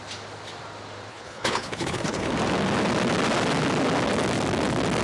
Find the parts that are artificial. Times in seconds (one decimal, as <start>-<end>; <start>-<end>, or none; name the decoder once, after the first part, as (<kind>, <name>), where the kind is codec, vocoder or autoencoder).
1.1-2.3 (codec, HILCodec)